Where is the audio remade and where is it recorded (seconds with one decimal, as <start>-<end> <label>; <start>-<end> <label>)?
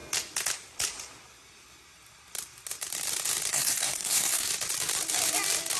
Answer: 0.0-3.5 recorded; 3.5-4.5 remade; 4.5-5.8 recorded